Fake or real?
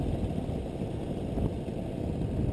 real